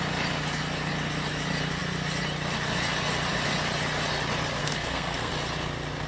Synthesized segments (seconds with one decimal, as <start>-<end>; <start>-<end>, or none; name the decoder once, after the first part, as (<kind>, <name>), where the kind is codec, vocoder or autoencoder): 4.6-5.3 (codec, SNAC)